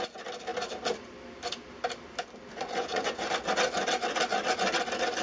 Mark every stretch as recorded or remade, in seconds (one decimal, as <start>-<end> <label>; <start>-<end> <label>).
0.0-2.5 recorded; 2.5-3.3 remade; 3.3-5.2 recorded